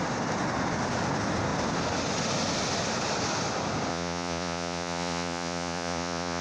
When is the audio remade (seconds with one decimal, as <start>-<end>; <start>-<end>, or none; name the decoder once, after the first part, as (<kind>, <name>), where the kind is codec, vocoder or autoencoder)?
3.9-6.4 (vocoder, Vocos)